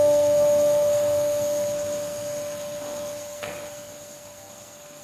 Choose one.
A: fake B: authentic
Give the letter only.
A